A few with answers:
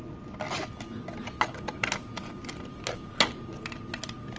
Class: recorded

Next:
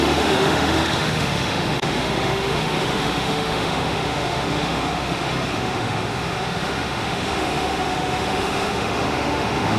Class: remade